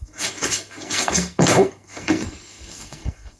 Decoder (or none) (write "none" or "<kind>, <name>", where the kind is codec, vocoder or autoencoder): codec, SNAC